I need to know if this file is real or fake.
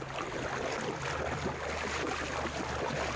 real